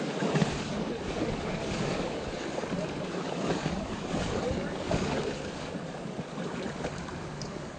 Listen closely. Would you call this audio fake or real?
fake